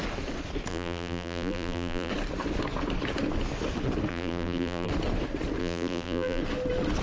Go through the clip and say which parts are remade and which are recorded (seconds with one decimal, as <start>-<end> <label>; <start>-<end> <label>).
0.0-0.7 recorded; 0.7-2.1 remade; 2.1-4.1 recorded; 4.1-4.9 remade; 4.9-5.6 recorded; 5.6-6.4 remade; 6.4-7.0 recorded